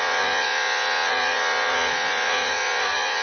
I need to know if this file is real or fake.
fake